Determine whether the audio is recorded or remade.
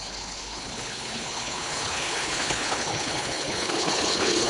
remade